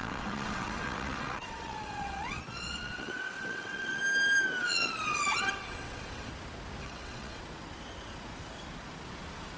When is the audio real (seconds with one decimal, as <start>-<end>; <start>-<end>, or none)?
4.0-4.6; 6.3-6.8; 7.4-9.6